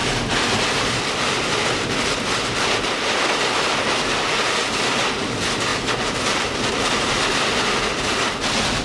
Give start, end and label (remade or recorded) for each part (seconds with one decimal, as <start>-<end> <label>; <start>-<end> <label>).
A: 0.0-8.8 recorded